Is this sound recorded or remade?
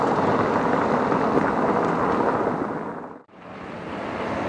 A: recorded